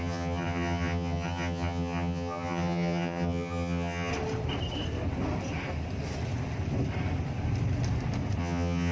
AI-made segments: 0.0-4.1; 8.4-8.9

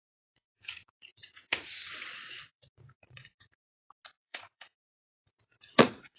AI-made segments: 0.0-3.7; 4.2-6.2